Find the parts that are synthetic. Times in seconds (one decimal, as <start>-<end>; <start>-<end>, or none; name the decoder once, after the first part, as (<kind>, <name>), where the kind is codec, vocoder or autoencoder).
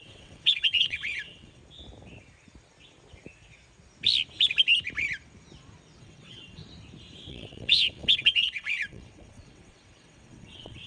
0.0-1.6 (vocoder, WaveNeXt); 6.0-6.6; 7.3-10.9